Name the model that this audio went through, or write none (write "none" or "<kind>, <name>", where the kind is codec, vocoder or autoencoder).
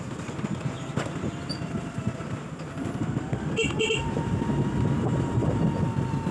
none